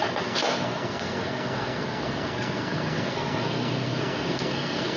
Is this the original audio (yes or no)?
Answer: no